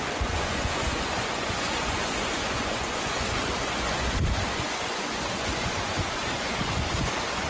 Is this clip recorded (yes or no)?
no